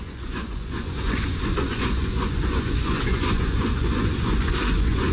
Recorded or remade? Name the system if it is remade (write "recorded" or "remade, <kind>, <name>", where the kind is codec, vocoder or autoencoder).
remade, vocoder, Vocos